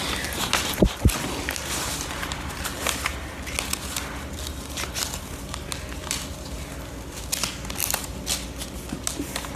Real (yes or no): yes